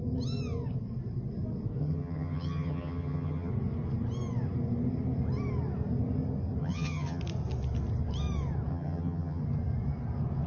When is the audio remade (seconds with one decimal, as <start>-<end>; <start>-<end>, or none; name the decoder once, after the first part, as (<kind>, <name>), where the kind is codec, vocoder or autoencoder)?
1.8-3.5 (vocoder, HiFi-GAN); 6.6-7.2; 8.7-9.4